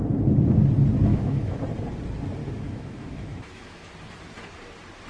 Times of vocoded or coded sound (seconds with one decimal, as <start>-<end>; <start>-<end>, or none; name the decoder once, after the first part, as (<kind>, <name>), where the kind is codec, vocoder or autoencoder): 1.1-1.6 (autoencoder, DAC-VAE); 2.4-3.9